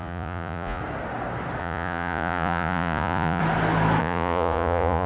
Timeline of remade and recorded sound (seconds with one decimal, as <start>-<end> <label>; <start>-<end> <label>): 0.0-0.8 remade; 0.8-1.6 recorded; 1.6-3.4 remade; 3.4-4.0 recorded; 4.0-5.1 remade